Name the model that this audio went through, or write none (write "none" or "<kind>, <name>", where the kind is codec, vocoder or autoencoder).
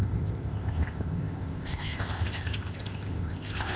codec, ZipCodec